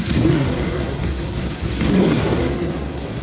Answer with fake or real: fake